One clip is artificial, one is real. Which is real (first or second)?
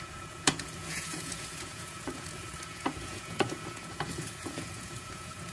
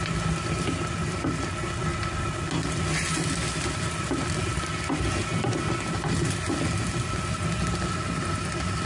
second